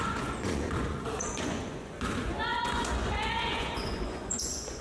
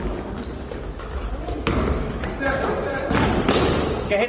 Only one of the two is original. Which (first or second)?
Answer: second